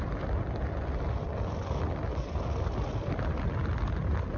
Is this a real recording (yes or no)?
yes